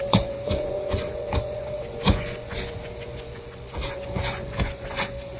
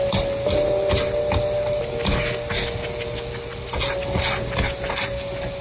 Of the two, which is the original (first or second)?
second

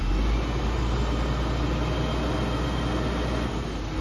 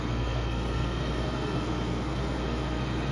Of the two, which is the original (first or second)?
first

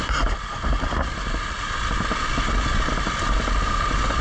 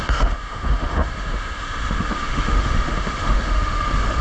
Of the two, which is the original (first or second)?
first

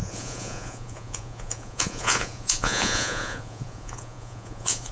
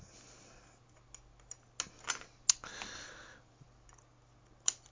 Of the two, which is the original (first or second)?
second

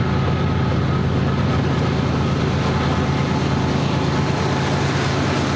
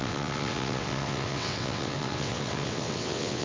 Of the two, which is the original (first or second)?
first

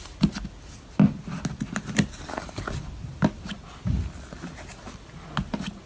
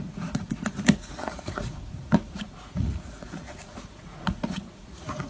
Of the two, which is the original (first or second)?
first